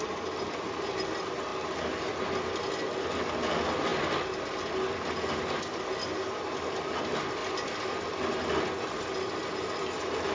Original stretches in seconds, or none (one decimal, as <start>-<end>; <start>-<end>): 0.0-10.3